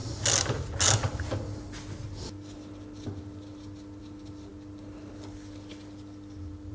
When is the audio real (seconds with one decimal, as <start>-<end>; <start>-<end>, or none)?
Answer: 0.0-6.7